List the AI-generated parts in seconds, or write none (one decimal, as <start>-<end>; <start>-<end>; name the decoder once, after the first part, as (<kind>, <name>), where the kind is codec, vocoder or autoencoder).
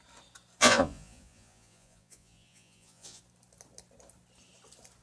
0.6-3.2 (vocoder, Vocos)